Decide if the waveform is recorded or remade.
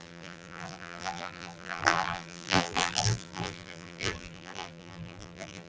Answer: remade